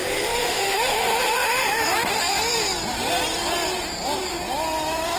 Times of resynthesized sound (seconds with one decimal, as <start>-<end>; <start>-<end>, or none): 0.0-1.8